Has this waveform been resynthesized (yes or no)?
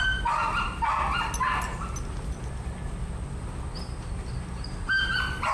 no